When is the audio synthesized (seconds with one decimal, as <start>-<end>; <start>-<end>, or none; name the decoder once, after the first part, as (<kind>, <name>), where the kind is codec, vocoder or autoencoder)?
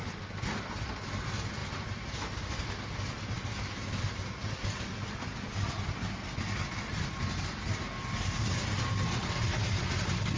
none